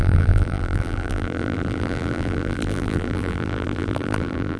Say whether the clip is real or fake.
fake